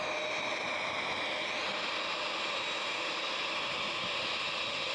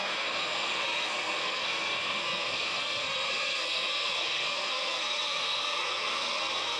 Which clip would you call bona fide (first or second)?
first